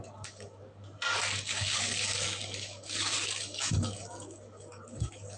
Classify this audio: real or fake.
fake